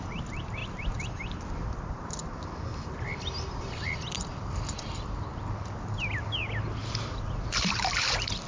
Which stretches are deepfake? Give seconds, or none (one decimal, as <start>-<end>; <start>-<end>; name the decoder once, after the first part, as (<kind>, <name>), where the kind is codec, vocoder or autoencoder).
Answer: 6.8-8.5 (vocoder, BigVGAN v2)